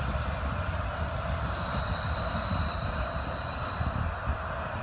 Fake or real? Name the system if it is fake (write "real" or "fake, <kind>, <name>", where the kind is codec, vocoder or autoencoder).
real